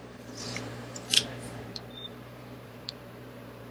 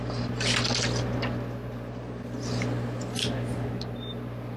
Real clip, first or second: second